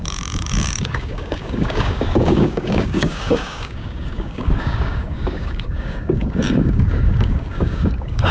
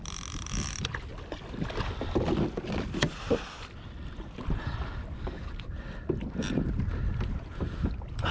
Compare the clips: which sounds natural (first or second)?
second